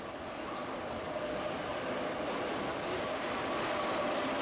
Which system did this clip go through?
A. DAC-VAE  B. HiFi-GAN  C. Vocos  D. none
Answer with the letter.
D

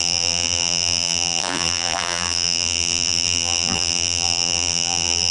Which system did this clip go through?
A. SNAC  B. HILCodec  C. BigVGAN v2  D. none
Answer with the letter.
C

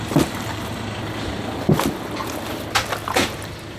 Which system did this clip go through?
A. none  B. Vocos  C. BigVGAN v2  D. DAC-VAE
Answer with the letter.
A